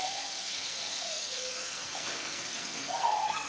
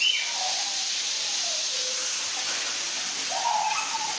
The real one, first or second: second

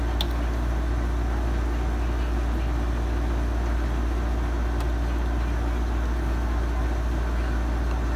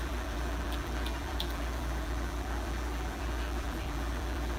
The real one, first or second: first